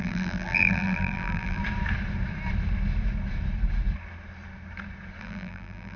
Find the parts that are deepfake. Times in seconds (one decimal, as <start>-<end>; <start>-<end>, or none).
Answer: 0.0-1.6; 5.2-6.0